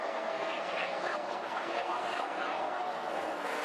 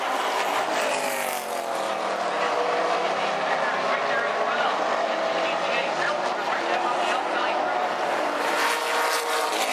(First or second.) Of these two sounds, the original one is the second